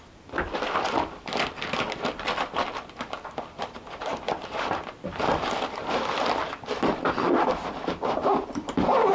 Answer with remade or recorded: remade